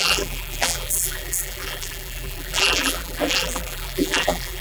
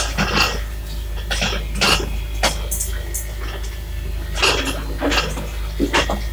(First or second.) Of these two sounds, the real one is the second